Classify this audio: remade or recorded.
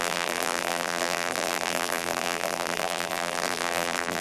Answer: remade